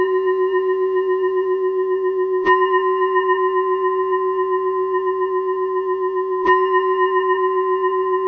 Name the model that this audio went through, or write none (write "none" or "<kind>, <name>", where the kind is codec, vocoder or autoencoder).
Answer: vocoder, Vocos